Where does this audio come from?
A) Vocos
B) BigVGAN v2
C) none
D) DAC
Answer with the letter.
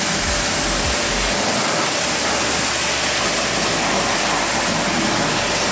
C